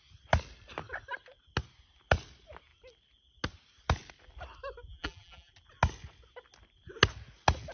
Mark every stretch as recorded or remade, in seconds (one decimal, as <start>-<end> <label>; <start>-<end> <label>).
0.0-4.9 recorded; 4.9-5.5 remade; 5.5-7.7 recorded